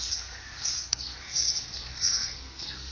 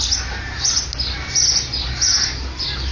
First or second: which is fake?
first